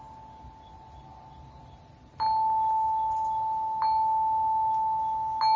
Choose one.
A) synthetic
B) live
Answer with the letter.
B